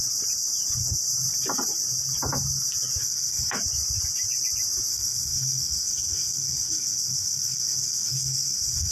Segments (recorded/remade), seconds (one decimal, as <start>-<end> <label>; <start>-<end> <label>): 0.0-3.0 recorded; 3.0-3.5 remade; 3.5-4.9 recorded; 4.9-8.9 remade